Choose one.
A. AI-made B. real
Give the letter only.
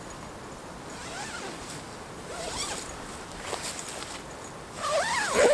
B